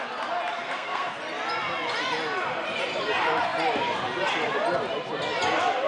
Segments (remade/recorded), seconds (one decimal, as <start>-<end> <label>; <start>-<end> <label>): 0.0-0.6 recorded; 0.6-1.2 remade; 1.2-5.9 recorded